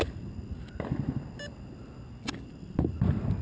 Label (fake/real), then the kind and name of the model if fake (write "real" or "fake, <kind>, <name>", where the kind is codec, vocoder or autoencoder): real